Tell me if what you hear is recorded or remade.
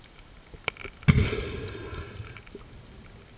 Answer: recorded